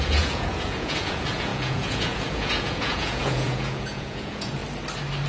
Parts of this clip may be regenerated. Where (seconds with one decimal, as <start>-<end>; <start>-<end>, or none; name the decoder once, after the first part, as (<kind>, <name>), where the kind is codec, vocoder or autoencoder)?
0.0-4.6 (vocoder, Vocos)